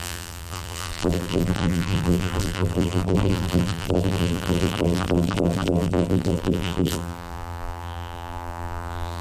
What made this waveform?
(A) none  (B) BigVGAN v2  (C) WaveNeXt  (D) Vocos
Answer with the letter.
B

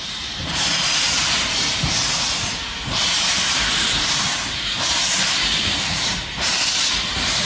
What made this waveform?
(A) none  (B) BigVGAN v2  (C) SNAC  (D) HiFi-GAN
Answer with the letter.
B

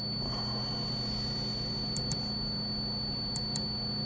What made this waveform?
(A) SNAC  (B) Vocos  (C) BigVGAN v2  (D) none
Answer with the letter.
D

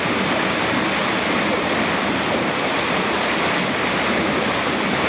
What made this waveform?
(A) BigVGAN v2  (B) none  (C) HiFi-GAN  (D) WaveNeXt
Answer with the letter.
A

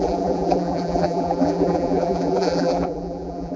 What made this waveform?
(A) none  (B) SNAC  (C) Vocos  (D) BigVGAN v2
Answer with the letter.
D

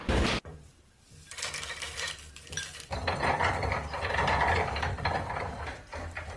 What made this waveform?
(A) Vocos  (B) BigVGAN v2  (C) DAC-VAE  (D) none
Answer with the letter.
B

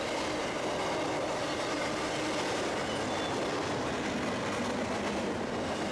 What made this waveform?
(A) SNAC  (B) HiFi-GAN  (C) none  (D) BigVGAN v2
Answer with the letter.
C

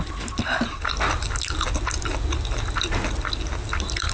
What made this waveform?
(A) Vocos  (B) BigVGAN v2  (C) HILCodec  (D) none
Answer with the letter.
D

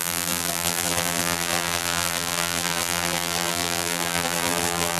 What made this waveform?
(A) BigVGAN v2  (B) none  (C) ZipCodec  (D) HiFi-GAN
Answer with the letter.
A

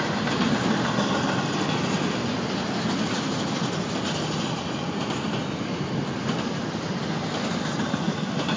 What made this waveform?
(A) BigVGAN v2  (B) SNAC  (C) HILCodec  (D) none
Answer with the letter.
D